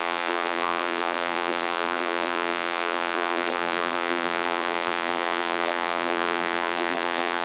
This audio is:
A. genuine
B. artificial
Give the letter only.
B